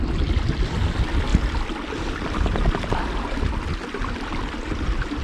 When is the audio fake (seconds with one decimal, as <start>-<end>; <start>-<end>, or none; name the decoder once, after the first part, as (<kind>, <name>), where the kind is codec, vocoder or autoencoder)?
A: none